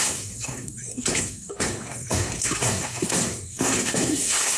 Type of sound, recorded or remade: remade